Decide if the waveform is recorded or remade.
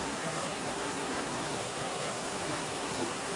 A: remade